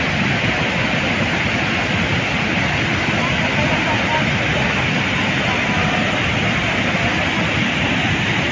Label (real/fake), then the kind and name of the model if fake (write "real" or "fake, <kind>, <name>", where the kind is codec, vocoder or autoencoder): real